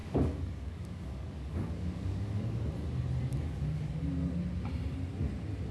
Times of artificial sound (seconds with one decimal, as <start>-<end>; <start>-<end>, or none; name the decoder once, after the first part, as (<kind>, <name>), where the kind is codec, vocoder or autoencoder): 0.0-2.7 (codec, DAC); 3.3-3.9